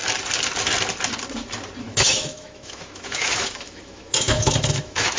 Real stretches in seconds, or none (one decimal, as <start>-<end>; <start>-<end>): 0.0-1.8